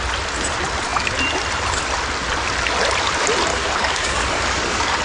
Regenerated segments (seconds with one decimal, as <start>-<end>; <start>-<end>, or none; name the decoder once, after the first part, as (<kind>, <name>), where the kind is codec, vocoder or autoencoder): 3.5-5.0 (codec, DAC)